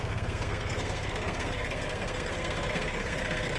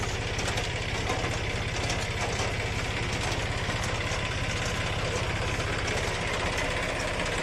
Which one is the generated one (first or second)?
first